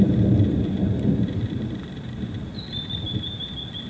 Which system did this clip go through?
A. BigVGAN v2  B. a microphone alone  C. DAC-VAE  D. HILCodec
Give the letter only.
B